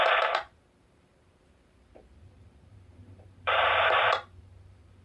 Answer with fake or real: fake